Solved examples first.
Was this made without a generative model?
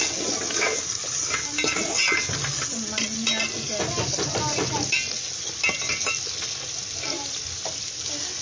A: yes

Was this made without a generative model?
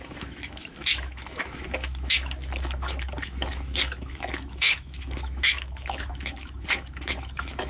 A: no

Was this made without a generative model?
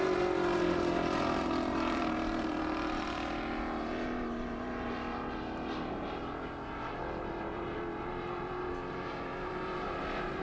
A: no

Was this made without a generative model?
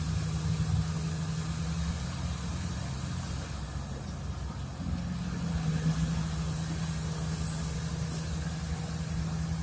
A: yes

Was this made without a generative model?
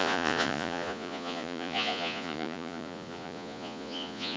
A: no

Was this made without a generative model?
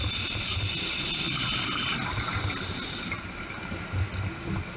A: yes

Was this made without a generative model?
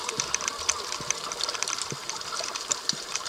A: no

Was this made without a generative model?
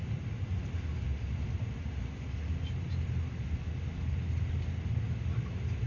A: yes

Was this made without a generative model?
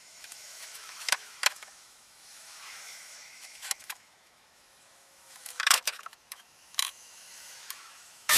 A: no